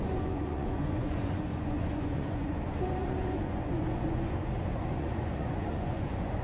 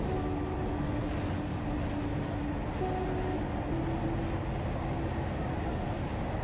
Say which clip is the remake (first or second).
first